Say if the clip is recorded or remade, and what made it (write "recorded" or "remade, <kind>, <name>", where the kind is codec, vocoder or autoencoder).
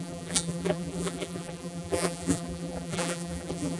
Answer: remade, vocoder, BigVGAN v2